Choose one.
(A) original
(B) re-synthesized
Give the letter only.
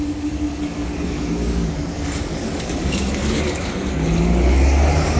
B